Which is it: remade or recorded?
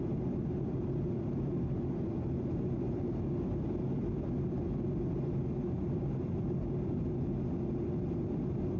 recorded